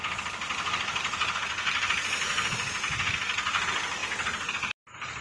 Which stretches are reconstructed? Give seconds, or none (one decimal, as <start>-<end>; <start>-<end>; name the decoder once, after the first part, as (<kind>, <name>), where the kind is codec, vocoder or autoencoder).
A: none